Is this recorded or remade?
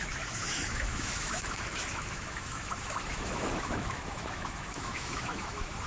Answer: remade